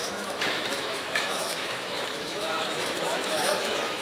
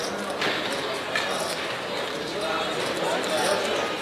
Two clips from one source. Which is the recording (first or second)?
second